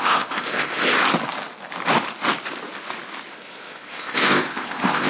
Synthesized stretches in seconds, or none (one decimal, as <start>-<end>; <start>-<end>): 0.0-0.9; 3.3-5.1